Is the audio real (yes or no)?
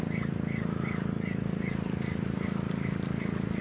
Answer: yes